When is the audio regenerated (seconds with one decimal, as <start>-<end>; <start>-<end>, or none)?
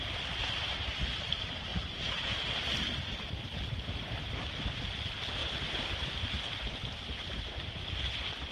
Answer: 0.4-1.0; 1.7-2.3